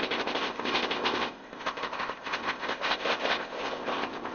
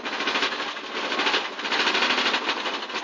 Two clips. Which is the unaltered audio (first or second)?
second